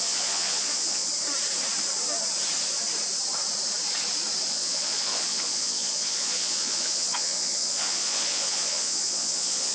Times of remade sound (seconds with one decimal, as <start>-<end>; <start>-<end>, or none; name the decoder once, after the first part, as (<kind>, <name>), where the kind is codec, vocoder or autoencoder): 0.0-1.1 (vocoder, Vocos); 4.5-9.7

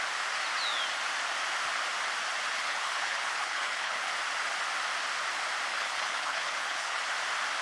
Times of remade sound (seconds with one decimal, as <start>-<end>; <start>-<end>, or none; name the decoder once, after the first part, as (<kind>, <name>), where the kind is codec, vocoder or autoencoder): 2.5-4.1 (codec, HILCodec); 5.7-7.0